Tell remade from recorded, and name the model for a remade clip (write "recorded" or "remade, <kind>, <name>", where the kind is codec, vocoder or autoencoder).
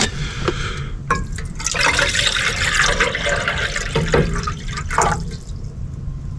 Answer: remade, vocoder, BigVGAN v2